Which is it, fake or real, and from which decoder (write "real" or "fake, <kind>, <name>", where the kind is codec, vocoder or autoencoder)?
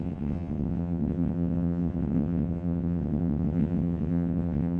fake, vocoder, WaveNeXt